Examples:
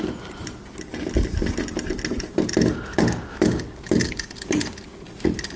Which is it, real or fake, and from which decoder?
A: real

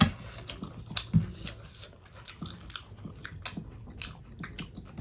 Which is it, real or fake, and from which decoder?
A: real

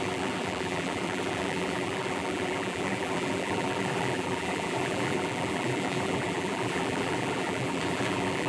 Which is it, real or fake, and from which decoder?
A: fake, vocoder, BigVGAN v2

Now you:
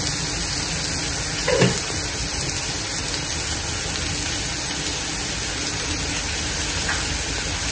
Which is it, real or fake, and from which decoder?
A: real